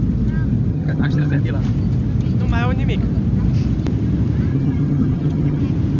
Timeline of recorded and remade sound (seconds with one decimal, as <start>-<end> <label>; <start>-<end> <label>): 0.0-0.7 recorded; 0.7-1.4 remade; 1.4-4.5 recorded; 4.5-5.6 remade; 5.6-6.0 recorded